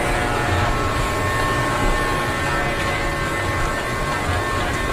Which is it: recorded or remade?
recorded